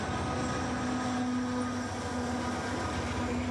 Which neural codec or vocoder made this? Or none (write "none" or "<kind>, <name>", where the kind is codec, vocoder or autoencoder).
none